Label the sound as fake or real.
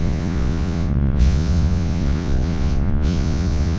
fake